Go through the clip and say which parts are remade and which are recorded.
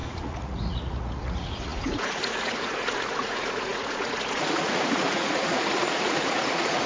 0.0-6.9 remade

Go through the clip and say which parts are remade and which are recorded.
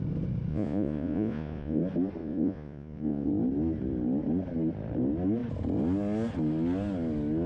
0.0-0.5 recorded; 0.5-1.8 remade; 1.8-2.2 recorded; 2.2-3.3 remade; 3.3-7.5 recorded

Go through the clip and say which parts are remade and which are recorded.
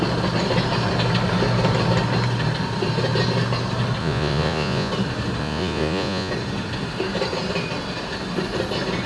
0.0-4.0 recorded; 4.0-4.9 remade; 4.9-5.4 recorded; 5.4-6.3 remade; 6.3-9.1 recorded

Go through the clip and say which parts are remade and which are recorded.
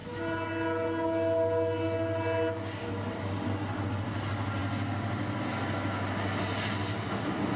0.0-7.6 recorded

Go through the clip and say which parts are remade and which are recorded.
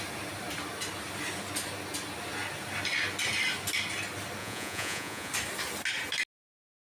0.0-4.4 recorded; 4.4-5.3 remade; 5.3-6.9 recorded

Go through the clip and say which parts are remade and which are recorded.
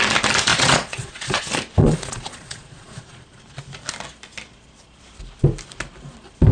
0.0-0.5 recorded; 0.5-1.4 remade; 1.4-1.8 recorded; 1.8-3.4 remade; 3.4-6.5 recorded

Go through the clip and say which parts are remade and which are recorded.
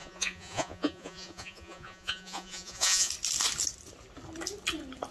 0.0-3.1 remade; 3.1-5.1 recorded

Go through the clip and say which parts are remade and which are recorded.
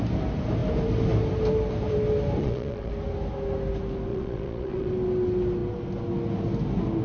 0.0-2.4 recorded; 2.4-2.9 remade; 2.9-4.1 recorded; 4.1-4.9 remade; 4.9-7.0 recorded